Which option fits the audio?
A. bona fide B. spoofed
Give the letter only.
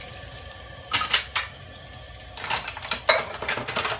A